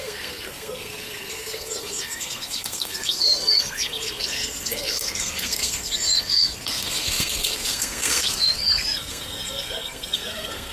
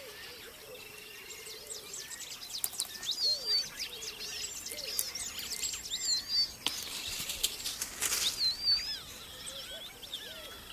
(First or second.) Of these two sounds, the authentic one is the second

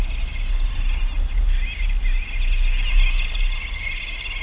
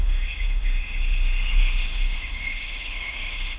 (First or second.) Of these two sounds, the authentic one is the first